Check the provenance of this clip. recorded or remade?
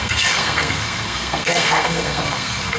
remade